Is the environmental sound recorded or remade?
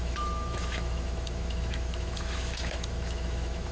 remade